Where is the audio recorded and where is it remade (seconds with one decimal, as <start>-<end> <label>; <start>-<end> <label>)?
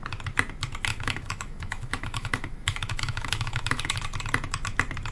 0.0-0.9 recorded; 0.9-4.0 remade; 4.0-5.1 recorded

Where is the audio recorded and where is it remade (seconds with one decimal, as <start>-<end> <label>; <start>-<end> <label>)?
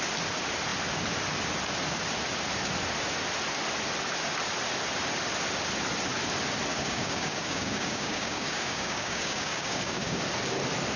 0.0-6.7 recorded; 6.7-10.2 remade; 10.2-11.0 recorded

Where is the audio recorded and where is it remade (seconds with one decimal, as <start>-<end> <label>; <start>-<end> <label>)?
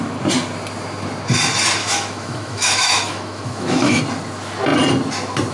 0.0-1.8 recorded; 1.8-4.0 remade; 4.0-5.5 recorded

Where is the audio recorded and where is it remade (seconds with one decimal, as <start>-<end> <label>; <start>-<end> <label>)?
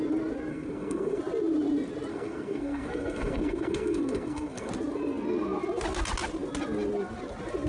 0.0-0.5 recorded; 0.5-1.2 remade; 1.2-2.1 recorded; 2.1-4.7 remade; 4.7-7.7 recorded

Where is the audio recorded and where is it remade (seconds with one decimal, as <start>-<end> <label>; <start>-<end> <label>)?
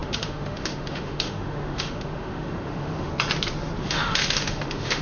0.0-3.1 remade; 3.1-3.8 recorded; 3.8-5.0 remade